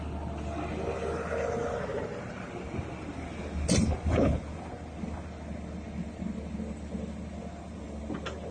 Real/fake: real